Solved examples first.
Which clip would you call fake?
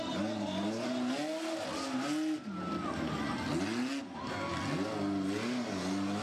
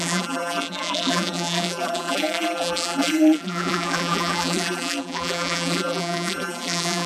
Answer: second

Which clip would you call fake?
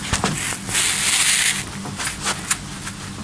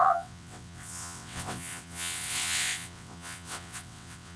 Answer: second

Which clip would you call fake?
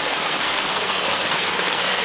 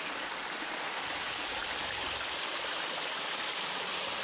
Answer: first